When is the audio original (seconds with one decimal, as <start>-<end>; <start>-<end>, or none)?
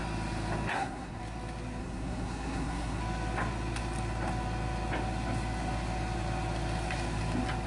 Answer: 0.0-0.7; 1.2-1.8; 3.0-7.7